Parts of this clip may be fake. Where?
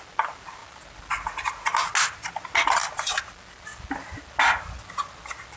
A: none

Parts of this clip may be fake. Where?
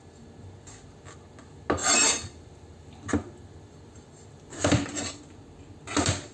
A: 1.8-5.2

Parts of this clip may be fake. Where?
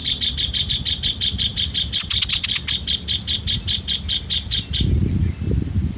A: none